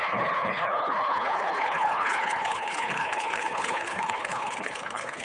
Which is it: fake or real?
fake